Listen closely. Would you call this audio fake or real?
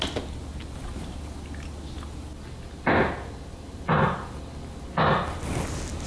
real